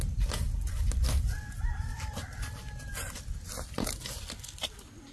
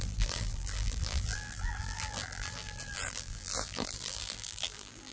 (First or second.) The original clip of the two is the first